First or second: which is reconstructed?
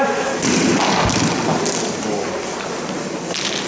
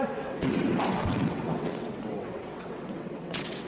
second